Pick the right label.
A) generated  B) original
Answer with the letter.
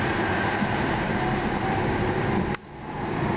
A